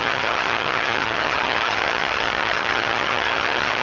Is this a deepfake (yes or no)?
yes